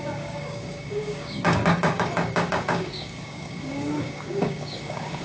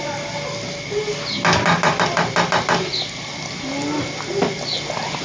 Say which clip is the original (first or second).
second